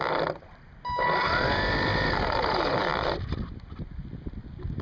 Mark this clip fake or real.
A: real